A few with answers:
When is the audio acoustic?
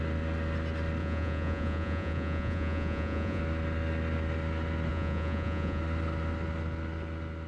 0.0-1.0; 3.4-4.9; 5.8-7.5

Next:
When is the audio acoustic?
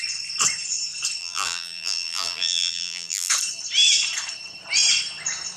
0.0-1.2; 3.3-5.6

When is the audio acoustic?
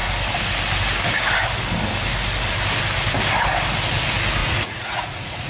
0.0-4.4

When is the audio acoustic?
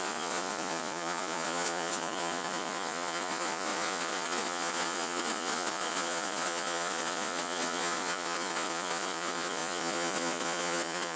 none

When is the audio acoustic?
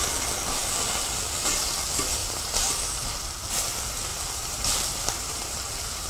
0.0-2.2; 2.9-4.1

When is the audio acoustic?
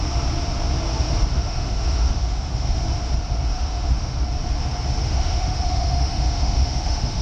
0.0-1.3; 2.8-3.5; 4.2-5.0